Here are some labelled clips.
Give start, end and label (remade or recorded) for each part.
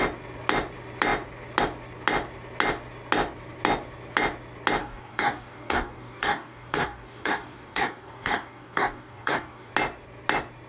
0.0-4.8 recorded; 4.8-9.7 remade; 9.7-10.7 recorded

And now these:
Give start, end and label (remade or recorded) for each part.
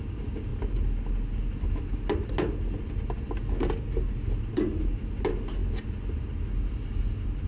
0.0-7.5 recorded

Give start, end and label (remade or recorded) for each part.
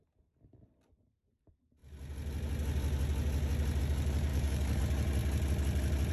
0.0-4.3 recorded; 4.3-4.8 remade; 4.8-6.1 recorded